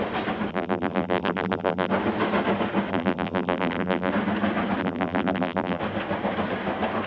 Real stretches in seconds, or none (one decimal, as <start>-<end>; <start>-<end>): 0.0-0.5; 1.9-2.9; 4.1-4.8; 5.8-7.1